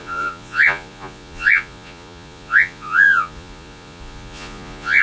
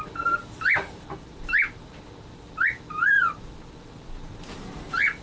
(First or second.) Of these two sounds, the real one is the second